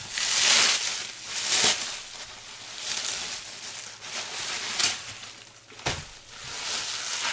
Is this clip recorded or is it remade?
recorded